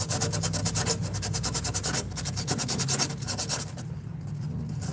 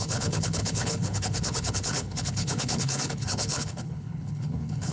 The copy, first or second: second